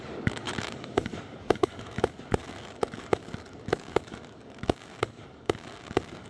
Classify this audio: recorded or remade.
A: remade